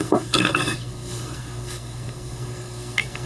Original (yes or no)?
no